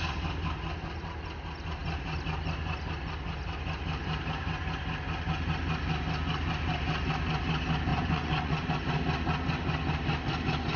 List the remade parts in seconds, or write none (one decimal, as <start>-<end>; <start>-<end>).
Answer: 7.9-8.7

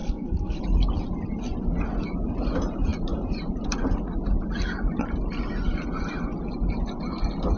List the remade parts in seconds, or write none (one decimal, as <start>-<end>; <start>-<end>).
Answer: 0.0-0.6